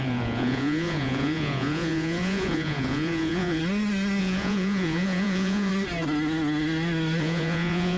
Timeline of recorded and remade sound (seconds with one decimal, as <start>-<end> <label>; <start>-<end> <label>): 0.0-3.6 remade; 3.6-4.2 recorded; 4.2-5.7 remade; 5.7-7.2 recorded; 7.2-8.0 remade